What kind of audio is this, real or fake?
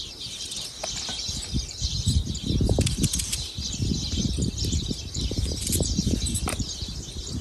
real